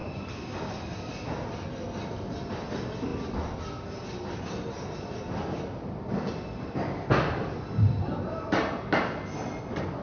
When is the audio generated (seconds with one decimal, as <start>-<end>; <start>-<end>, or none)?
none